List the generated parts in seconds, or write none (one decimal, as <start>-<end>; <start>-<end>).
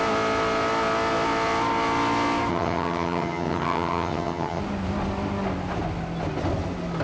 2.5-4.6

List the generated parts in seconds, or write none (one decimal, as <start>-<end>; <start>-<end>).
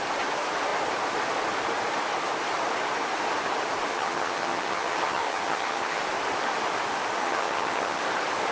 3.9-6.0; 7.2-8.0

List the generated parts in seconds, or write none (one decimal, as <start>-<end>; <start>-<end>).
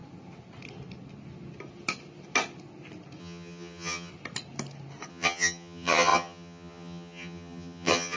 3.2-4.1; 5.1-8.2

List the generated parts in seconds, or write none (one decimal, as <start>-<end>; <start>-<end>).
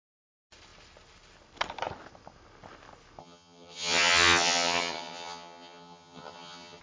3.2-6.8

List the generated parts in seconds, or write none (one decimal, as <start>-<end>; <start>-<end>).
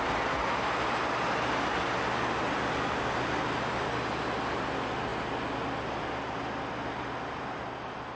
none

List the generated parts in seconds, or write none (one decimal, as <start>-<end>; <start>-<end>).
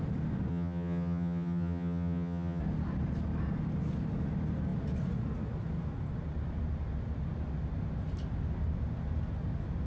0.5-2.6